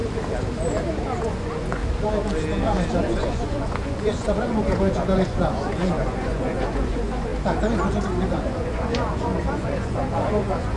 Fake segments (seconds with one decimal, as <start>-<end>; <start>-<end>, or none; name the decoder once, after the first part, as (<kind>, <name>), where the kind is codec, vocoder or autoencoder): 1.2-1.8 (vocoder, Vocos); 2.9-7.3; 8.3-10.8